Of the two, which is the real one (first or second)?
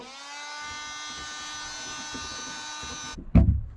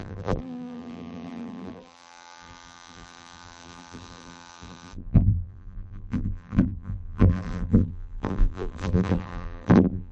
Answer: first